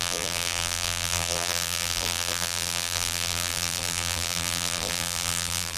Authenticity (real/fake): fake